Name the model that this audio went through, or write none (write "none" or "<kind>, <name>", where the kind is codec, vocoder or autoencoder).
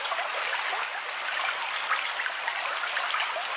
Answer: none